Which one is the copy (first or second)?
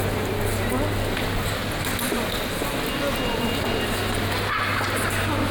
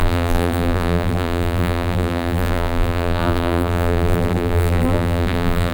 second